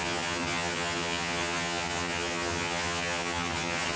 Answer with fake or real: fake